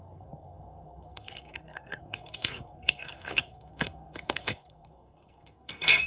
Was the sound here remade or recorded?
remade